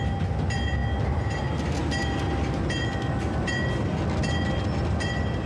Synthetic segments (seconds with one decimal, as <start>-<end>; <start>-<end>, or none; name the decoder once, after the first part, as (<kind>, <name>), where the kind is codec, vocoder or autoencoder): none